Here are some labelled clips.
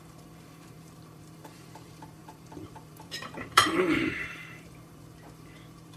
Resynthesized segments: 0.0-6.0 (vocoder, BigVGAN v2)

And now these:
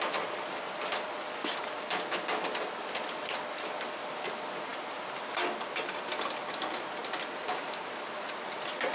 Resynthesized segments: none

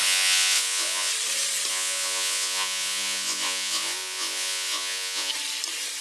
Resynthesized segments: 0.0-1.1 (vocoder, Vocos); 1.7-5.3